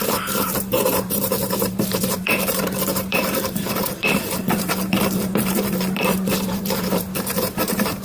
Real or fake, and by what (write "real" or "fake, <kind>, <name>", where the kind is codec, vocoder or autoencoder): fake, vocoder, BigVGAN v2